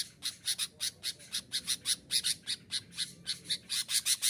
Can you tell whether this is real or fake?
real